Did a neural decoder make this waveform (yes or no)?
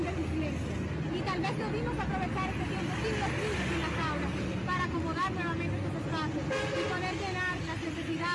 no